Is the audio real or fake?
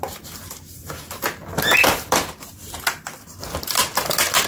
fake